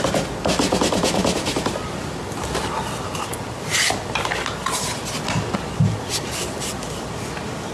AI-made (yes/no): no